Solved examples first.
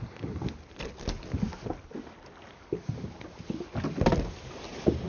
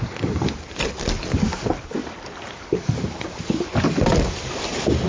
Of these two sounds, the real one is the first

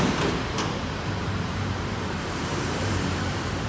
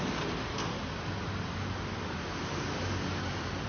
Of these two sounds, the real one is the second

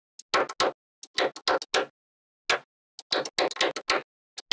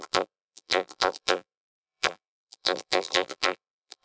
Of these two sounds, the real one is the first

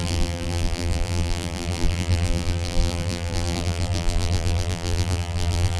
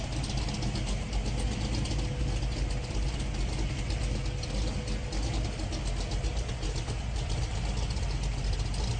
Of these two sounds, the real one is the second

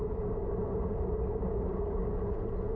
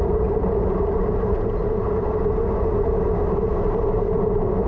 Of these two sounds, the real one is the first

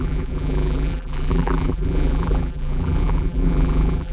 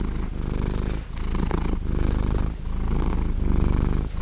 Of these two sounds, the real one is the second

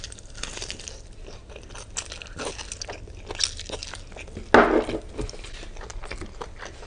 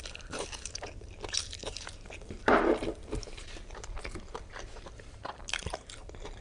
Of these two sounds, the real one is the first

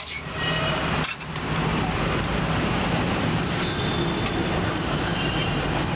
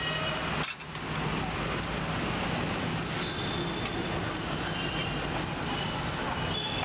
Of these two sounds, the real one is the second